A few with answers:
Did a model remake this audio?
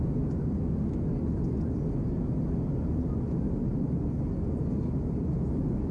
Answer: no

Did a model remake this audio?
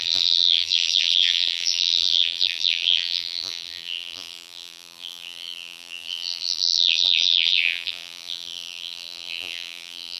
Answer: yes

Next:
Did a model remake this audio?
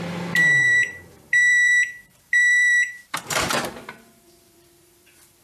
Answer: yes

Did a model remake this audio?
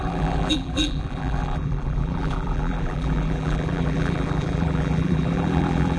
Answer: yes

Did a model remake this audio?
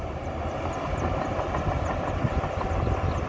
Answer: no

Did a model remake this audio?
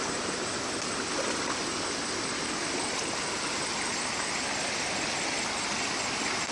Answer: no